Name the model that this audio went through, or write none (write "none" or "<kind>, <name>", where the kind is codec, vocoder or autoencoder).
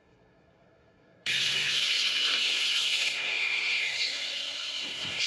codec, SNAC